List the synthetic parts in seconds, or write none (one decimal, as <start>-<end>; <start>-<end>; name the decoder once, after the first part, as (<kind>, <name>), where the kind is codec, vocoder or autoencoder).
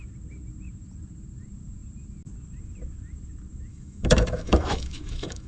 3.7-5.5 (autoencoder, DAC-VAE)